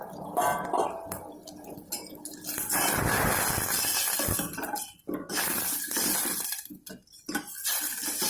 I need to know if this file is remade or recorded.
recorded